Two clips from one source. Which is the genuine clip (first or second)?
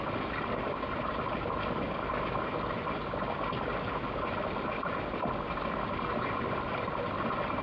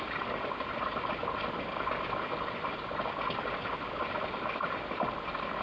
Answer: first